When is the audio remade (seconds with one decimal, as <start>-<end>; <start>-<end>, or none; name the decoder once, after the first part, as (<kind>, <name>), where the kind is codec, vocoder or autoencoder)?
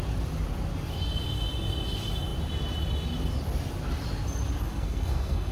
4.7-5.5 (codec, SNAC)